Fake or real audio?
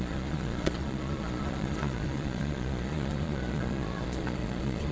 fake